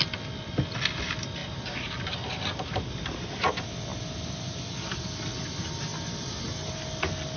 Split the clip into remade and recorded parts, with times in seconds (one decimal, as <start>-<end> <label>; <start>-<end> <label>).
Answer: 0.0-7.4 recorded